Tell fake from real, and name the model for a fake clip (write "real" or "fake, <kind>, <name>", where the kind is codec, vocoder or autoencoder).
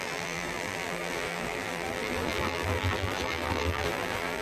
fake, vocoder, BigVGAN v2